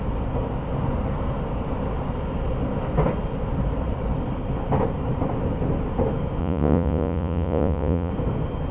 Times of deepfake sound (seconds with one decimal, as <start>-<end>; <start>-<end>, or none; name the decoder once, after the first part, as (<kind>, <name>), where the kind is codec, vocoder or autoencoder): 6.4-8.1 (vocoder, Vocos)